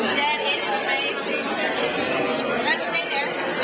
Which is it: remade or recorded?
recorded